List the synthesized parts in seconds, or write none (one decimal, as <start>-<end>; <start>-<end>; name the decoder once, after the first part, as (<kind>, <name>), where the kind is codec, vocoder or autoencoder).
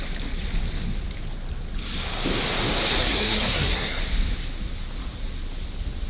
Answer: 3.0-4.0 (codec, SNAC)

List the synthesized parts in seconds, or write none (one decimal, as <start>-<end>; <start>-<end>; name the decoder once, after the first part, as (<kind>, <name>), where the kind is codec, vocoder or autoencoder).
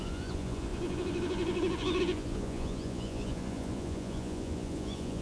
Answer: 0.0-5.2 (vocoder, Vocos)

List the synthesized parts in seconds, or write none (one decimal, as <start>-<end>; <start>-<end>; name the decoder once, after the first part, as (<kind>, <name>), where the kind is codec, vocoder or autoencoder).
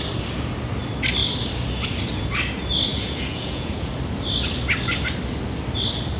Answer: 2.9-3.9 (vocoder, Vocos)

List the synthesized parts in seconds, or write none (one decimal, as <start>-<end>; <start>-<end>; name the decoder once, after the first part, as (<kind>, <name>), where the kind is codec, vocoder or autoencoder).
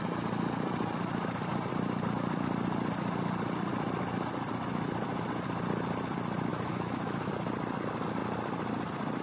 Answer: 6.5-7.3 (autoencoder, DAC-VAE)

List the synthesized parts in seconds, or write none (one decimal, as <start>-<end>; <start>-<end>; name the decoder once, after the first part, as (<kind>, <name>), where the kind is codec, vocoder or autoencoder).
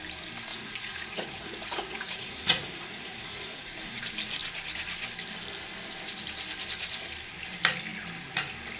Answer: 0.5-4.0 (vocoder, Vocos)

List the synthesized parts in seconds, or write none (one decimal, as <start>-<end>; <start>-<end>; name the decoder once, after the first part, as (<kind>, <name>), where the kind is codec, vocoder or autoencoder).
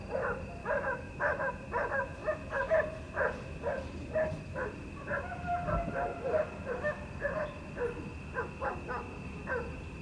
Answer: 0.6-1.5 (autoencoder, DAC-VAE)